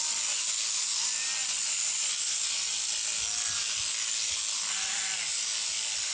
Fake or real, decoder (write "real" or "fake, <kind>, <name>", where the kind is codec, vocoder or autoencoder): real